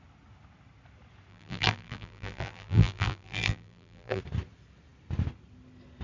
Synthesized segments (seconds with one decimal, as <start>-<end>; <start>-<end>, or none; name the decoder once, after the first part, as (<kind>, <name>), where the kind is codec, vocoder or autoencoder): 1.3-4.2 (vocoder, BigVGAN v2)